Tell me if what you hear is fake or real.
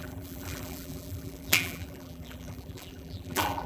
fake